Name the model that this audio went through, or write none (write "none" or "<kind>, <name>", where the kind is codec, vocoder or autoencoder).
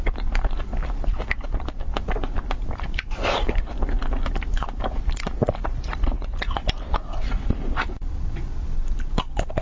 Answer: none